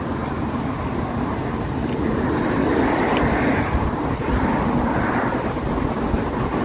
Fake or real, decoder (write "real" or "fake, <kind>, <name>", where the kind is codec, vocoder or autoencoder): real